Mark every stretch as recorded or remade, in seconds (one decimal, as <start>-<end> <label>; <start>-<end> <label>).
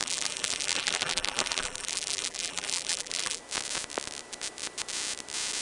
0.0-3.4 remade; 3.4-5.6 recorded